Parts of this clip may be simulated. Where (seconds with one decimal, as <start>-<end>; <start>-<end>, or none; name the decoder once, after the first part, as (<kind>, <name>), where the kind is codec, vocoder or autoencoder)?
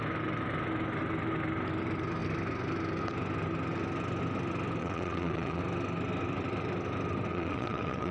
4.8-5.6 (vocoder, WaveNeXt); 7.3-8.1